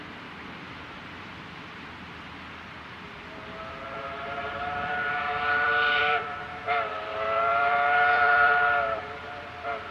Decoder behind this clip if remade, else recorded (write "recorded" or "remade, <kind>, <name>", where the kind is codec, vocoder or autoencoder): remade, vocoder, BigVGAN v2